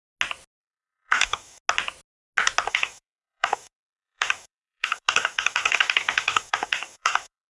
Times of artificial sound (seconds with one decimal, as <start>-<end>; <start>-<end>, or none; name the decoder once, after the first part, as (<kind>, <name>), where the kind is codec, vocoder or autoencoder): 0.6-1.6 (codec, DAC); 2.7-7.5